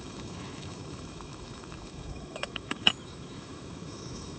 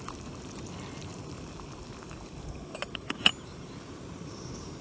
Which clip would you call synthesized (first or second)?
first